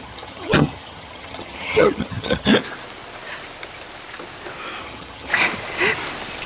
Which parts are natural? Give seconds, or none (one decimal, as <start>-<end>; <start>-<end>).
2.5-4.8; 5.3-6.5